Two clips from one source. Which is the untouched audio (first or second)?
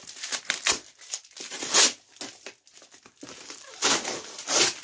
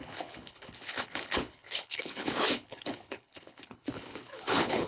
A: first